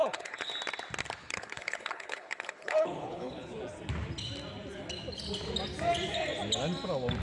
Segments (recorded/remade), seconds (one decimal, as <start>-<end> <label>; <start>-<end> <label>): 0.0-0.5 remade; 0.5-1.2 recorded; 1.2-3.5 remade; 3.5-7.2 recorded